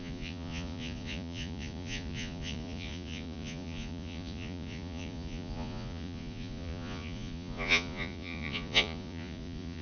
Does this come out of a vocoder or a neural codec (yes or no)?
yes